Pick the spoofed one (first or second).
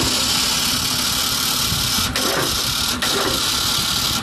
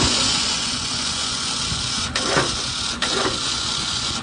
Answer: second